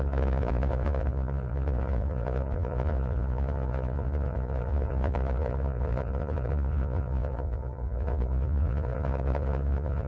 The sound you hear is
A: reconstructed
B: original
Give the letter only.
A